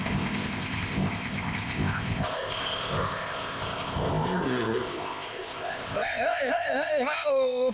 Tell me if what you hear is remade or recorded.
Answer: remade